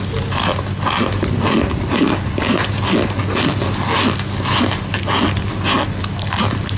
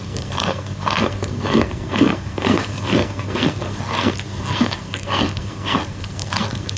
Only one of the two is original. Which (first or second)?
first